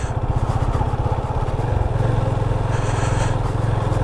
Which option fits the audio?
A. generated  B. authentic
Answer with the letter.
B